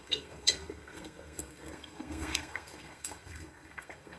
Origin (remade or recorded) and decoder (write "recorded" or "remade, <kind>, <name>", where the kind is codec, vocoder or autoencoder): remade, codec, SNAC